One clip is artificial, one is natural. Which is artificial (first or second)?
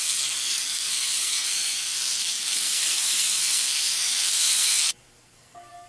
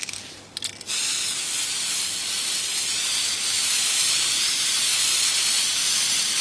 first